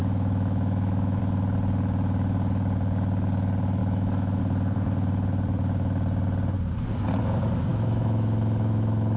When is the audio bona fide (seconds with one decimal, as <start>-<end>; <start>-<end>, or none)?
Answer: 1.2-3.8; 4.4-7.7